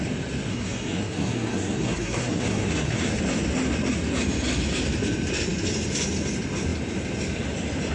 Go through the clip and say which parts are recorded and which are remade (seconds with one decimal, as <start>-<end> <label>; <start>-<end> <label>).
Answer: 0.0-0.5 recorded; 0.5-3.2 remade; 3.2-7.9 recorded